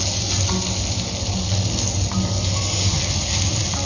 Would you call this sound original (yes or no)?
yes